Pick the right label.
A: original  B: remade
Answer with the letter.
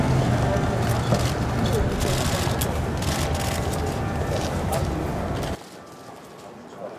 A